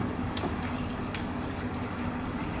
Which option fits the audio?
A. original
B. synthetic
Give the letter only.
B